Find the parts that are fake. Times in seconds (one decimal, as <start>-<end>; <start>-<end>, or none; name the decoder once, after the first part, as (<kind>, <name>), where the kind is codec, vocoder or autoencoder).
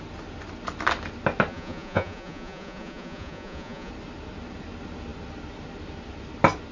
1.5-3.9 (vocoder, Vocos)